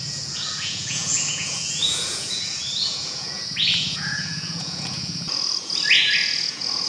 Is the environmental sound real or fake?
fake